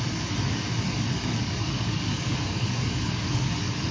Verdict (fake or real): fake